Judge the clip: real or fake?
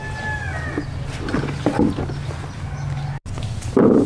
real